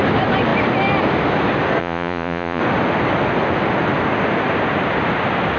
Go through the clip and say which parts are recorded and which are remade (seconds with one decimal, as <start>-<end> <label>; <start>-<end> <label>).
0.0-1.8 recorded; 1.8-2.6 remade; 2.6-5.6 recorded